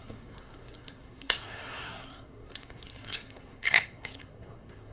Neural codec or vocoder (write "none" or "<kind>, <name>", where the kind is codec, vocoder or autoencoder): codec, SNAC